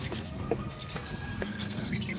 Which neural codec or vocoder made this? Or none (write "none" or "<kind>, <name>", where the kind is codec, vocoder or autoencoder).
codec, SNAC